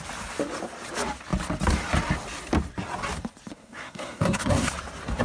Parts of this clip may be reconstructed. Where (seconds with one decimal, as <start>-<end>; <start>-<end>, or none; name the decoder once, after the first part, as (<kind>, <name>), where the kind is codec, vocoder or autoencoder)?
3.5-4.7 (codec, SNAC)